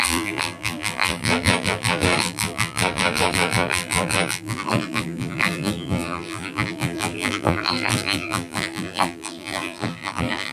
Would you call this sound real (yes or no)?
no